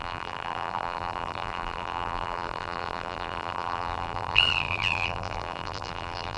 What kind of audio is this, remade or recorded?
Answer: remade